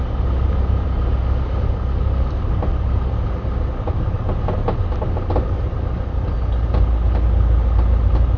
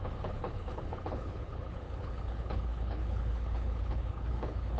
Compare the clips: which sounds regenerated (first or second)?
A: second